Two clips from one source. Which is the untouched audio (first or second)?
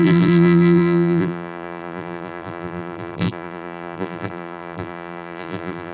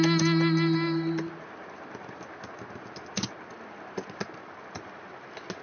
second